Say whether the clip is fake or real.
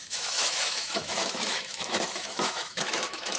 fake